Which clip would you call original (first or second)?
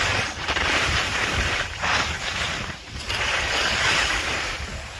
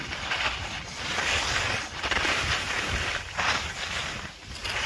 second